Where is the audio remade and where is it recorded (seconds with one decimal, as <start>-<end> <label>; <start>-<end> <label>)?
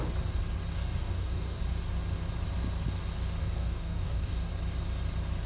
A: 0.0-0.7 recorded; 0.7-1.6 remade; 1.6-3.4 recorded; 3.4-4.5 remade; 4.5-5.5 recorded